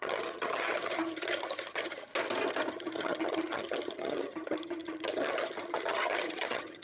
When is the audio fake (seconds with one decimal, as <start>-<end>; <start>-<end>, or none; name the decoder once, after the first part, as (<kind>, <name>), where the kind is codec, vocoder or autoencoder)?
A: 0.0-2.1 (vocoder, HiFi-GAN); 2.7-6.8